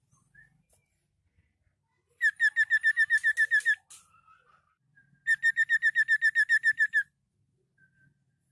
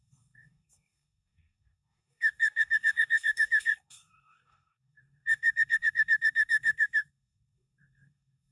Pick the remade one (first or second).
second